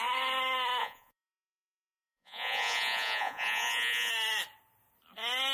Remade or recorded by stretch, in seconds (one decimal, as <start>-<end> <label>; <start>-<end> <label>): 0.0-0.8 recorded; 0.8-4.1 remade; 4.1-5.5 recorded